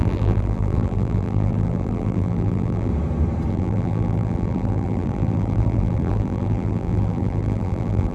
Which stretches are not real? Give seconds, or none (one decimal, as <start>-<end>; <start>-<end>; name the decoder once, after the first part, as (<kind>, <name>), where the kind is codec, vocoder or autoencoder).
0.0-2.9 (vocoder, BigVGAN v2); 3.5-8.1